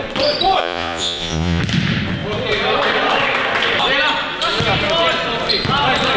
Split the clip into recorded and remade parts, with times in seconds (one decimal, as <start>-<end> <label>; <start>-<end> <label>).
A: 0.0-0.6 recorded; 0.6-1.6 remade; 1.6-6.2 recorded